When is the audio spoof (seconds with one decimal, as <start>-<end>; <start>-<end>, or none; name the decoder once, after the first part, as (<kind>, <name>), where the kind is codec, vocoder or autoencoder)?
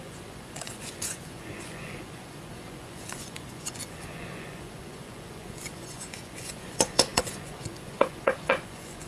0.0-9.1 (vocoder, Vocos)